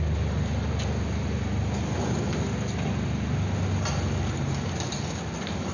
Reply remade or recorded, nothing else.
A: recorded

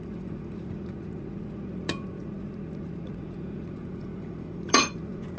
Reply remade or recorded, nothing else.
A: remade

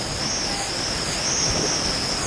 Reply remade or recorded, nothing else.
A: recorded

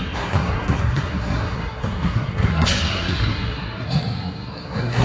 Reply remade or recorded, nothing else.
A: remade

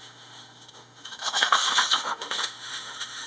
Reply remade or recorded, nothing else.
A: remade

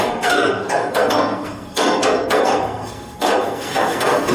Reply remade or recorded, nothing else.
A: remade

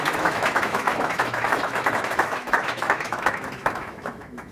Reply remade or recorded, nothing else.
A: remade